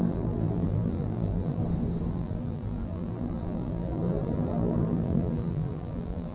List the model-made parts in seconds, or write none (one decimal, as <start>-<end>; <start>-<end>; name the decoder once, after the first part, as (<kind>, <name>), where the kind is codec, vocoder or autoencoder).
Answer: 0.0-1.6 (vocoder, BigVGAN v2); 2.1-6.3